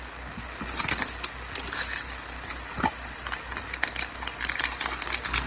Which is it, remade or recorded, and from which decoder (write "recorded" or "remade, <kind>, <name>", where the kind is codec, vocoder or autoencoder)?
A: recorded